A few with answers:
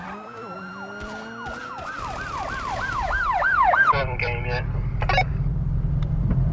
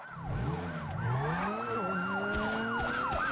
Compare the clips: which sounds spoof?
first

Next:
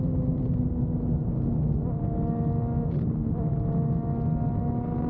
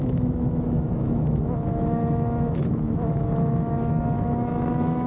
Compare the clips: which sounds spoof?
second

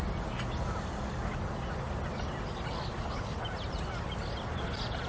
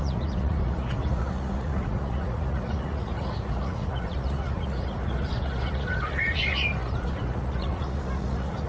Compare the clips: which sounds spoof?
second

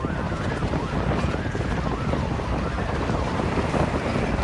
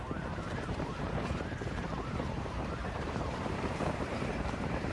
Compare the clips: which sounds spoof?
second